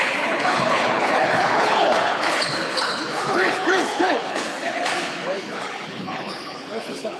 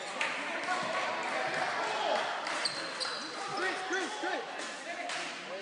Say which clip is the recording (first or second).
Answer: second